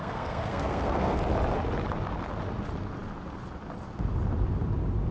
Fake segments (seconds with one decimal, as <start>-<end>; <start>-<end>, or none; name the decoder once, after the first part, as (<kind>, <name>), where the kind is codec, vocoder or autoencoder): 0.0-1.2 (codec, SNAC)